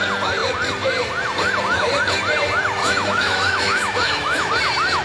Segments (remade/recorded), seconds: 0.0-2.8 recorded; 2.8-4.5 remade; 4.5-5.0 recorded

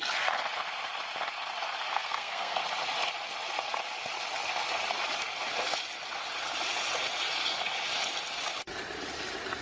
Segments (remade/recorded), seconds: 0.0-1.9 recorded; 1.9-2.6 remade; 2.6-9.6 recorded

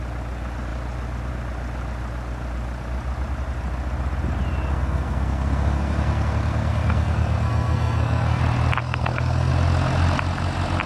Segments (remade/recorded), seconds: 0.0-4.7 recorded; 4.7-8.4 remade; 8.4-8.8 recorded; 8.8-9.5 remade; 9.5-10.9 recorded

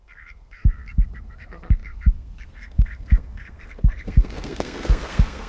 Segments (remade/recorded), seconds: 0.0-5.5 remade

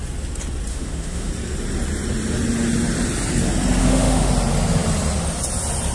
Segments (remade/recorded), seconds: 0.0-0.7 recorded; 0.7-1.3 remade; 1.3-3.8 recorded; 3.8-4.3 remade; 4.3-5.9 recorded